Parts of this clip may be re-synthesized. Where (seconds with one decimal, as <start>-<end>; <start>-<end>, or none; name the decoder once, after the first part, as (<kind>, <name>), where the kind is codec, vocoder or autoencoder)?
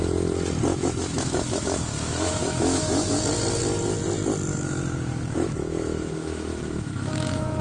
0.7-3.2 (autoencoder, DAC-VAE); 4.5-7.6